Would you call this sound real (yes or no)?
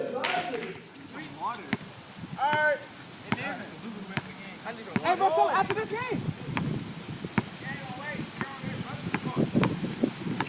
yes